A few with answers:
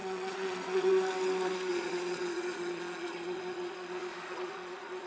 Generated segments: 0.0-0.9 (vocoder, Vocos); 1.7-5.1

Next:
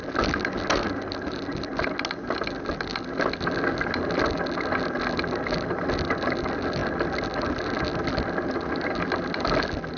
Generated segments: none

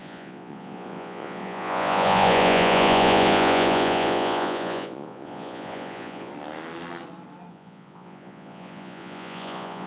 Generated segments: 0.0-6.3 (vocoder, Vocos); 7.5-9.9

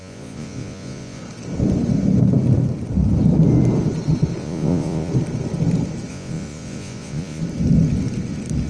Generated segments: 0.0-1.2 (vocoder, Vocos); 4.4-5.1; 6.1-7.4

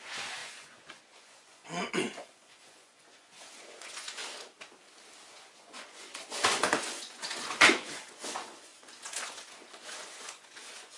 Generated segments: 0.0-4.2 (vocoder, Vocos); 5.3-11.0

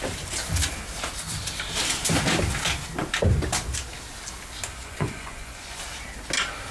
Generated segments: 4.8-5.8 (vocoder, Vocos)